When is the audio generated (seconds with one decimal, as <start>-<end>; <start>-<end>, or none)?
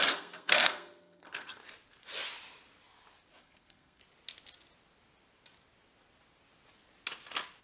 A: 0.0-1.6; 3.4-4.0